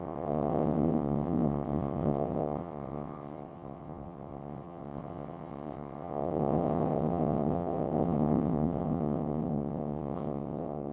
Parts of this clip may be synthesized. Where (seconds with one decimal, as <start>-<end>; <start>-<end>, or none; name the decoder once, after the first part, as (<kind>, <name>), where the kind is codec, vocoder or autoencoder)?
0.0-10.9 (vocoder, WaveNeXt)